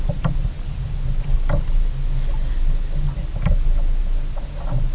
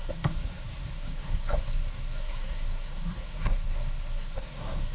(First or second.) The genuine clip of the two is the first